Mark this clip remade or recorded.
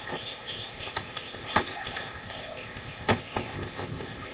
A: remade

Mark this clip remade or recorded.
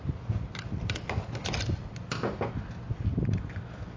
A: recorded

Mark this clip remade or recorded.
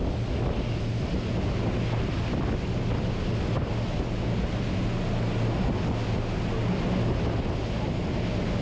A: recorded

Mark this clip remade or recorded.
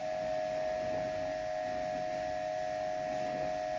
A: recorded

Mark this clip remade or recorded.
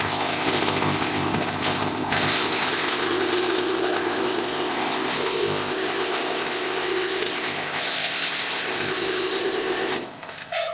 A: remade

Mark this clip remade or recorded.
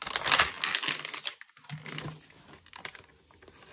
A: recorded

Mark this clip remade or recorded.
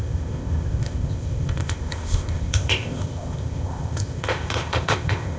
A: remade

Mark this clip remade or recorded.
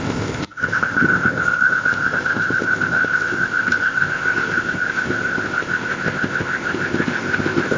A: remade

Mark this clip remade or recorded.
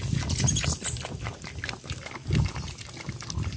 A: recorded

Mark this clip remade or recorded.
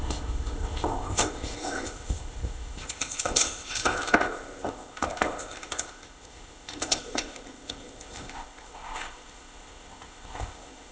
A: remade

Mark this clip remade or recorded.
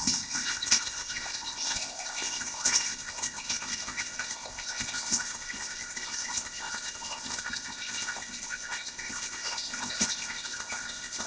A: remade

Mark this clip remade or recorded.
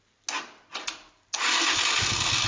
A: recorded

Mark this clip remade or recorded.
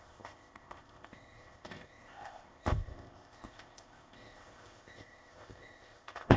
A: remade